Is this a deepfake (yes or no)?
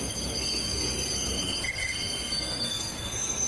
yes